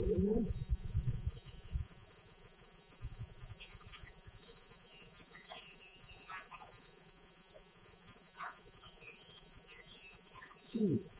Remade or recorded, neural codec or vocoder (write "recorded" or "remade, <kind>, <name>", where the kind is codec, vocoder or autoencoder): remade, vocoder, Vocos